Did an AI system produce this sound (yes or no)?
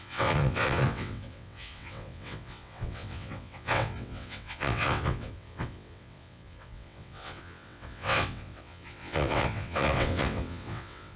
yes